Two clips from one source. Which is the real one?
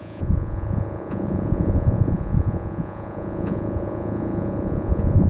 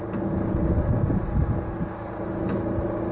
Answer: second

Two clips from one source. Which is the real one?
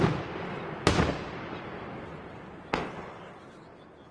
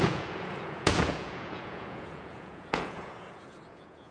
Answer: first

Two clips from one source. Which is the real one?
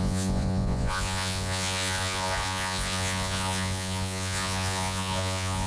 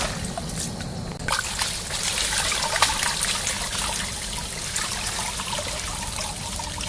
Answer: second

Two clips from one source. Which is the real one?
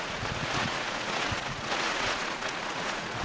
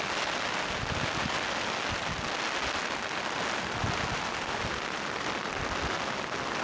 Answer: second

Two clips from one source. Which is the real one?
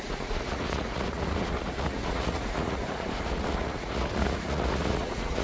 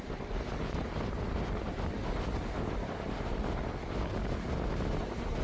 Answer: second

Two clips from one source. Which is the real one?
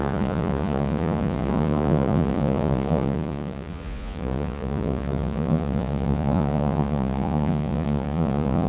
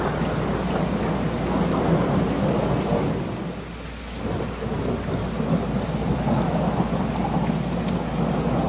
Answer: second